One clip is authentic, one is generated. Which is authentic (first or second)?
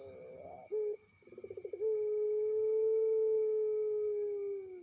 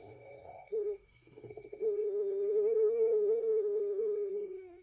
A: first